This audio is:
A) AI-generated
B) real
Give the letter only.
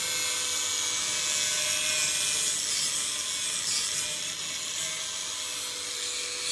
B